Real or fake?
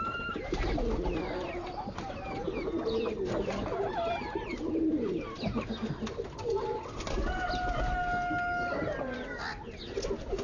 real